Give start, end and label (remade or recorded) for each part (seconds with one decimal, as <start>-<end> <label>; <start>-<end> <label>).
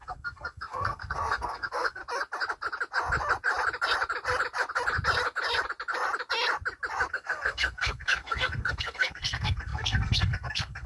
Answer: 0.0-2.0 remade; 2.0-7.1 recorded; 7.1-10.9 remade